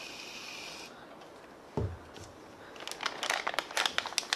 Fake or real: real